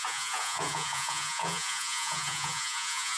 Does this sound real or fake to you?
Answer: fake